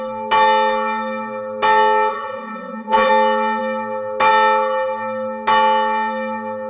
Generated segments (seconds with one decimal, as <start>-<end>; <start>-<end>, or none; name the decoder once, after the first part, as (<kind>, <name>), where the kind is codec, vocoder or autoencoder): 2.1-3.1 (vocoder, Vocos)